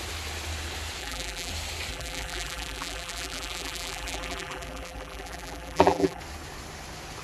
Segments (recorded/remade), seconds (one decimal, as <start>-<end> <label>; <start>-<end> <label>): 0.0-1.0 recorded; 1.0-1.5 remade; 1.5-1.9 recorded; 1.9-6.2 remade; 6.2-7.2 recorded